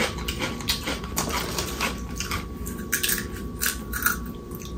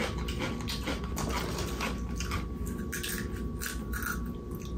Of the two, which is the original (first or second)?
second